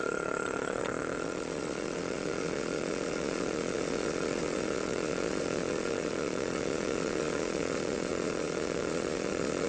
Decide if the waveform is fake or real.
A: fake